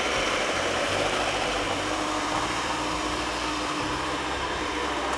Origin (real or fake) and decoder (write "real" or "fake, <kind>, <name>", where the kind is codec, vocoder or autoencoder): fake, vocoder, BigVGAN v2